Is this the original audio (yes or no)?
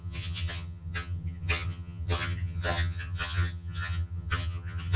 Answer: no